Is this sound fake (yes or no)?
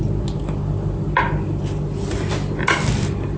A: no